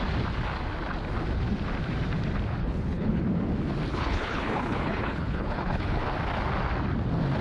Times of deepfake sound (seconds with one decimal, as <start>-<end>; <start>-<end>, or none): 2.6-3.2; 3.9-6.0